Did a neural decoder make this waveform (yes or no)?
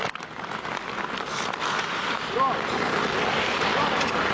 no